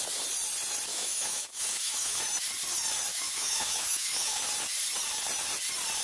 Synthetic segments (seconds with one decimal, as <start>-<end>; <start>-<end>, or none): 0.9-2.2; 3.1-4.4

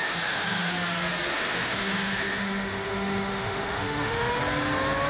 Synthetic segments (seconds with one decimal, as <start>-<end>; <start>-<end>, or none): 0.0-0.7; 1.3-4.4

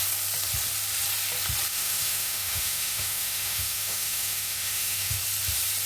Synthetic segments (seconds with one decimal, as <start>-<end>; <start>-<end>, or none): 1.7-5.2

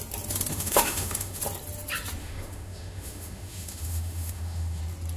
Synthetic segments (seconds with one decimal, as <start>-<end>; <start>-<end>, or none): 0.5-1.4; 2.2-4.8

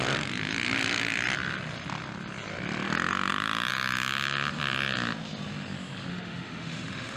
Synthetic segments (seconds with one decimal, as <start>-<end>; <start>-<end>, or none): 6.1-7.2

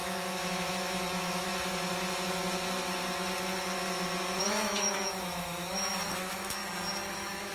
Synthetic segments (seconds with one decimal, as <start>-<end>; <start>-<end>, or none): 0.0-1.5; 4.4-6.6; 7.1-7.5